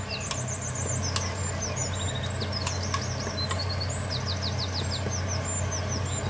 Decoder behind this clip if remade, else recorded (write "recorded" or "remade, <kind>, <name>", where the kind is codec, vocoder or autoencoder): recorded